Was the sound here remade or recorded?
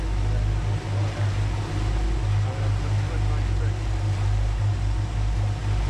recorded